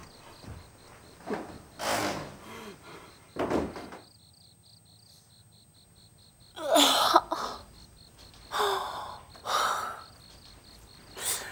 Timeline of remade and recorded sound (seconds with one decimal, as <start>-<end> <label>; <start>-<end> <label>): 0.0-11.5 recorded